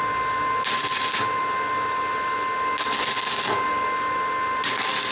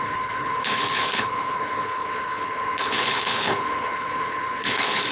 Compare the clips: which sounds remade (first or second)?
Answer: second